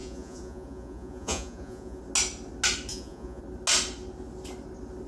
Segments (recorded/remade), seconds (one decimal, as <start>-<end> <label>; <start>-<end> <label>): 0.0-2.0 remade; 2.0-2.9 recorded; 2.9-3.4 remade; 3.4-5.1 recorded